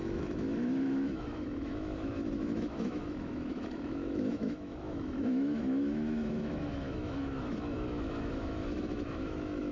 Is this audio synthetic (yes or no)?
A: yes